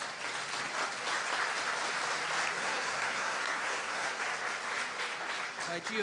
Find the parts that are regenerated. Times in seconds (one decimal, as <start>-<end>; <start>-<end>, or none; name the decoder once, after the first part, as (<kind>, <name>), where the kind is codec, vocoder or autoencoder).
2.6-4.2 (codec, SNAC)